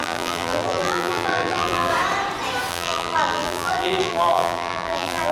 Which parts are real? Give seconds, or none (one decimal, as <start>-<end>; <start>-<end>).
1.9-2.7